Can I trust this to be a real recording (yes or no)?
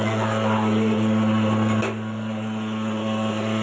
yes